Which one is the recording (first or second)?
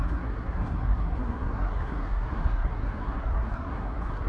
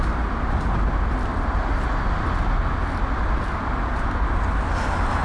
second